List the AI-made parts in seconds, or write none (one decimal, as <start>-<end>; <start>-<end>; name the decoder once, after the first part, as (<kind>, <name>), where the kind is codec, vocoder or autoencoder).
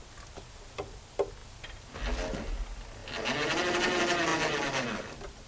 none